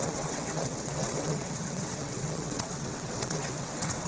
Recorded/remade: remade